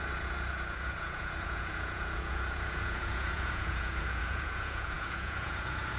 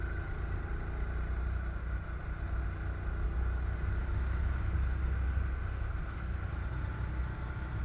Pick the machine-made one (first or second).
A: first